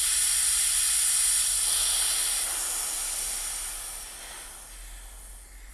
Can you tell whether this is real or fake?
real